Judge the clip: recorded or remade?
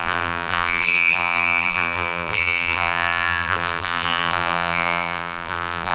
remade